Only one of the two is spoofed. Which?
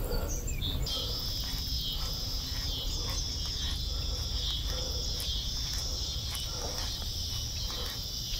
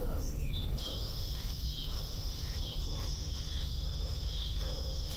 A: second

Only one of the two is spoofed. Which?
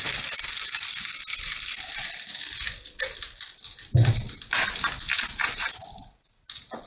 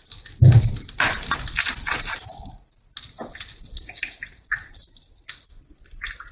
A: second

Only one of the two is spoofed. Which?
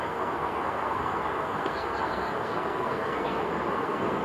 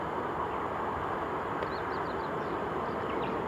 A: first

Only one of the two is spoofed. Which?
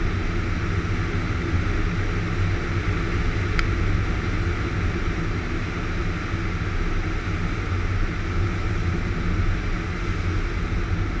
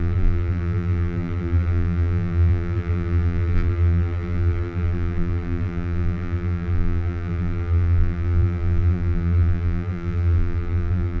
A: second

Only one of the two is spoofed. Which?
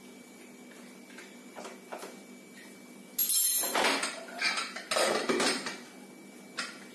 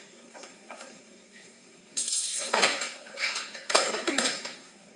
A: second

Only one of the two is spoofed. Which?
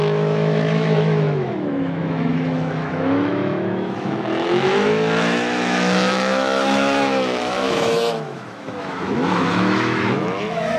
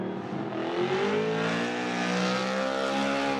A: first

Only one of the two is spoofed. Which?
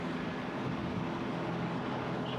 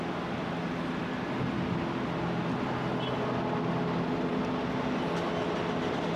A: first